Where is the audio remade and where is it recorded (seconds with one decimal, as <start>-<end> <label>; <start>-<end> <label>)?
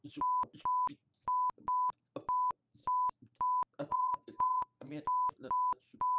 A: 0.0-3.9 recorded; 3.9-4.9 remade; 4.9-6.2 recorded